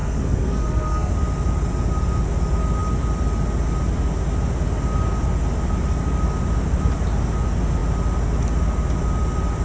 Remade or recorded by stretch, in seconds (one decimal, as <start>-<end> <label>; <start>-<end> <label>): 0.0-1.1 remade; 1.1-9.6 recorded